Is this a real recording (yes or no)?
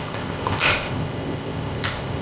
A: no